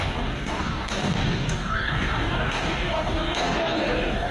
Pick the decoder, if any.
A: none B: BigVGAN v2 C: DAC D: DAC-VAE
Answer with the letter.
C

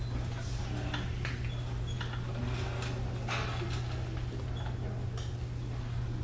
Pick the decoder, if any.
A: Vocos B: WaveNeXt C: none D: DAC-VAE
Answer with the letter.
C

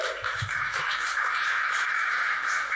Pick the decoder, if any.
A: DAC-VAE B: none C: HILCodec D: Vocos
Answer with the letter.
A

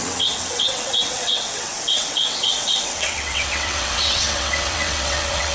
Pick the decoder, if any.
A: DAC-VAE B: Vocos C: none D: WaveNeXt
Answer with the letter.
D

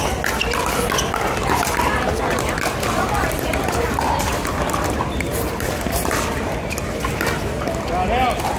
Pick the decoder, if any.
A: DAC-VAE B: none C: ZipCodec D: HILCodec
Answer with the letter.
B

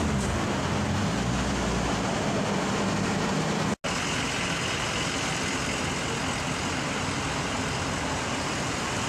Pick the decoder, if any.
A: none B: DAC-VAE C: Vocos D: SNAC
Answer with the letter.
A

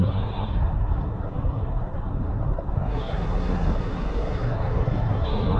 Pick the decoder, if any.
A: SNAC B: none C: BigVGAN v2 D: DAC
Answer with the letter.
A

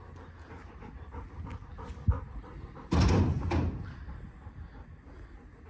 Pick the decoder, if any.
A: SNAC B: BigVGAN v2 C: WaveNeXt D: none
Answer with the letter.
D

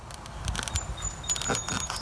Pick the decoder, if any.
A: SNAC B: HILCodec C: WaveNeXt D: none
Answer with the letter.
D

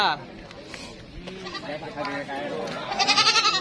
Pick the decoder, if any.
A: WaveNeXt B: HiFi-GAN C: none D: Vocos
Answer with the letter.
C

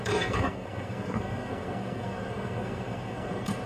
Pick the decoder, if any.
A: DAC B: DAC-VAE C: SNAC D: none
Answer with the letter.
C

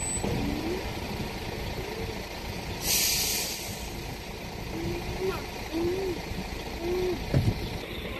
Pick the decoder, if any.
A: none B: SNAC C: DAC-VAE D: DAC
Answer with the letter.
A